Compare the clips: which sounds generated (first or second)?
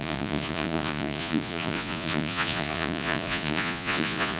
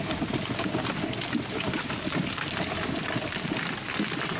first